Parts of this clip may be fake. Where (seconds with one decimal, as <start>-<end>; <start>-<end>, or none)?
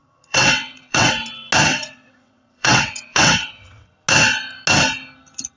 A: 0.0-1.1; 1.7-3.9